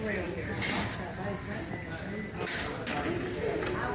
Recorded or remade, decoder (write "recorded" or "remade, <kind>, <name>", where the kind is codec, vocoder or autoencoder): recorded